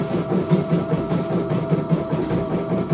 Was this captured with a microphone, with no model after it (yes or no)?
yes